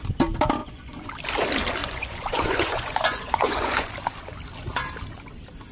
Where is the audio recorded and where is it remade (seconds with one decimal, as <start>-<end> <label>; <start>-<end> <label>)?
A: 0.0-0.6 recorded; 0.6-1.1 remade; 1.1-1.8 recorded; 1.8-3.9 remade; 3.9-5.7 recorded

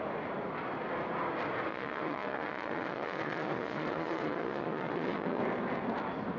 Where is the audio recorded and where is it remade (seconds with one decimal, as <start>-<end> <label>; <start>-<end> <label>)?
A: 0.0-1.7 recorded; 1.7-5.4 remade; 5.4-6.4 recorded

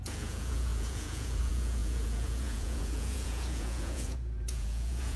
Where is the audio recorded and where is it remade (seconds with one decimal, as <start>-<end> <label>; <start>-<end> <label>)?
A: 0.0-5.2 remade

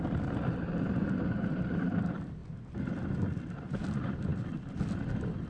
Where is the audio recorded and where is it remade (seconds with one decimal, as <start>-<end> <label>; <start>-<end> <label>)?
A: 0.0-5.5 recorded

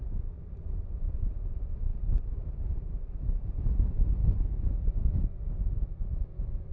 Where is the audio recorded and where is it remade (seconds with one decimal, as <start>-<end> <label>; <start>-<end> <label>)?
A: 0.0-6.7 recorded

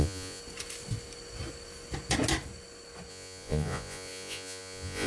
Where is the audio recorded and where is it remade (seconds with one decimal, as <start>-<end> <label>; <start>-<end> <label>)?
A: 0.0-0.4 remade; 0.4-3.1 recorded; 3.1-5.1 remade

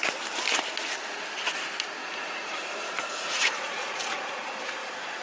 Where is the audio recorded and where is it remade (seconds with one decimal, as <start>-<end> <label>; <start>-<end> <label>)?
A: 0.0-2.0 recorded; 2.0-5.2 remade